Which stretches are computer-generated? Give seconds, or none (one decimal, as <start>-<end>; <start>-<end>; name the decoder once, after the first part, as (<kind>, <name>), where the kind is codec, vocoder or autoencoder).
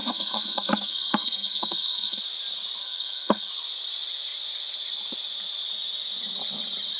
0.0-2.2 (codec, SNAC); 2.8-3.5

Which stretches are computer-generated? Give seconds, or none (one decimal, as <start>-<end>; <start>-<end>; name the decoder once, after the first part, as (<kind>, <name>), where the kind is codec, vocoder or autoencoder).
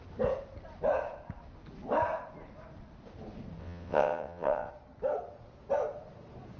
3.6-4.7 (vocoder, WaveNeXt)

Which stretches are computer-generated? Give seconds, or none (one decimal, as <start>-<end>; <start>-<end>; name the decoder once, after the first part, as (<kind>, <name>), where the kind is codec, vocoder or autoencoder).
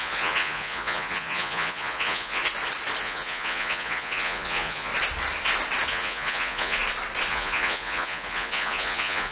0.0-2.4 (vocoder, Vocos); 3.0-4.9; 5.9-6.8; 7.3-9.3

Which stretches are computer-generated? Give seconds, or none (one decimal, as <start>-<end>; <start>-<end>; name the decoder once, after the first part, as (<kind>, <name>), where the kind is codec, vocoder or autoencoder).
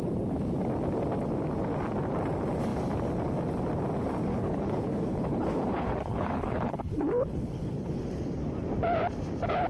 4.3-8.0 (codec, HILCodec)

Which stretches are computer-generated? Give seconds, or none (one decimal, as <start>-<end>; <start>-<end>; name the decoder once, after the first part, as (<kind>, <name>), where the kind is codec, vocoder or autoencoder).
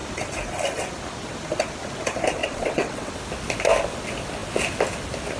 2.4-3.1 (vocoder, WaveNeXt)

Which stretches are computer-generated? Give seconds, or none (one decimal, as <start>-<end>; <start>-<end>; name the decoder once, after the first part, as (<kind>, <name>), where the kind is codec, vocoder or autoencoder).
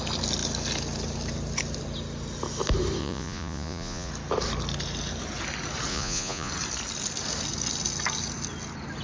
3.0-4.1 (vocoder, Vocos); 5.9-6.5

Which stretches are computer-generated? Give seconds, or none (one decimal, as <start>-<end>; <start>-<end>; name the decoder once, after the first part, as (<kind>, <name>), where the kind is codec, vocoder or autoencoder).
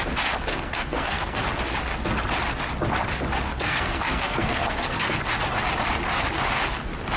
0.5-1.4 (codec, SNAC); 3.5-5.2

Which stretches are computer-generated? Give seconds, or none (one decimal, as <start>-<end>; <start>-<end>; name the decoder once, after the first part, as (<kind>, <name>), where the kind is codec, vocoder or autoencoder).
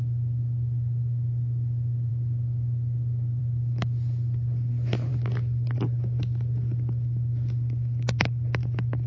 none